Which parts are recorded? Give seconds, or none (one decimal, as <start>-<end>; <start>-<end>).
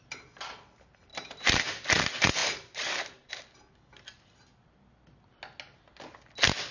0.0-1.1; 2.0-2.4; 3.3-6.7